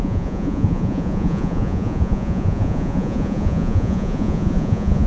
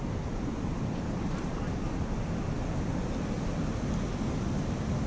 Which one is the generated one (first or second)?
first